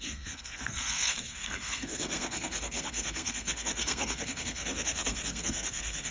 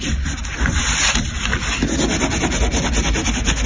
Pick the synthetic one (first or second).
first